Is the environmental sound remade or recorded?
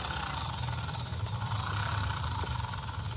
recorded